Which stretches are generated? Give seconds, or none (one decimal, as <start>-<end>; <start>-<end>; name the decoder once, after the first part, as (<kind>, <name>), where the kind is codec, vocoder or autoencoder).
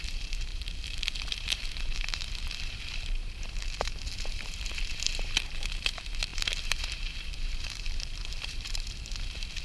0.0-9.6 (vocoder, BigVGAN v2)